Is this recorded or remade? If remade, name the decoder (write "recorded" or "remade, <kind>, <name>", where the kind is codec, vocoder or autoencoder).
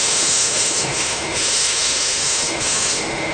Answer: remade, autoencoder, DAC-VAE